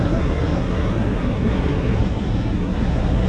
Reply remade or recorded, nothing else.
remade